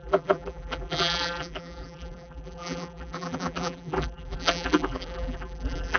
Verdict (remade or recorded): remade